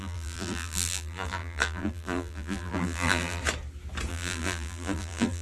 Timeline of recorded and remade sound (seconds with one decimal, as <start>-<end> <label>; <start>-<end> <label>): 0.0-3.4 remade; 3.4-4.1 recorded; 4.1-5.4 remade